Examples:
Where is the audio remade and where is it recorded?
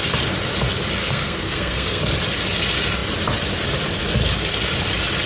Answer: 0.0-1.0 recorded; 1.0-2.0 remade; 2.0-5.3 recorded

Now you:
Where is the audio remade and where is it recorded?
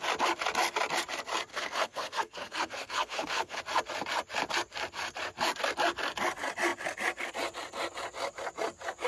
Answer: 0.0-1.5 recorded; 1.5-3.6 remade; 3.6-9.1 recorded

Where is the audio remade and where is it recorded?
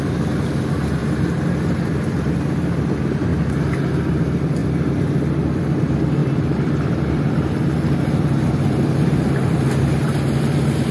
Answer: 0.0-4.6 recorded; 4.6-5.6 remade; 5.6-6.2 recorded; 6.2-9.8 remade; 9.8-10.9 recorded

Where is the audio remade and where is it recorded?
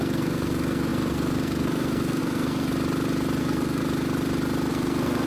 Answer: 0.0-2.7 remade; 2.7-3.4 recorded; 3.4-3.8 remade; 3.8-4.7 recorded; 4.7-5.3 remade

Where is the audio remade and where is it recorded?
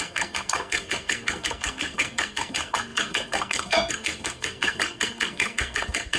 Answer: 0.0-6.2 remade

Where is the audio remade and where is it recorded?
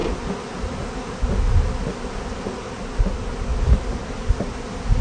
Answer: 0.0-5.0 recorded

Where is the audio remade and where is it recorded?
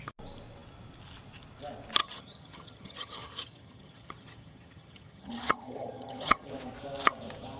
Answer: 0.0-2.0 recorded; 2.0-6.5 remade; 6.5-7.6 recorded